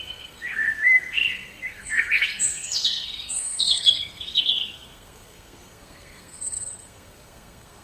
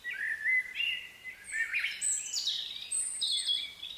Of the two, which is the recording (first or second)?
second